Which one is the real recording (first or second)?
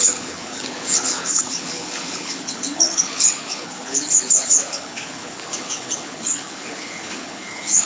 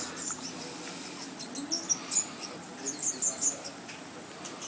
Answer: second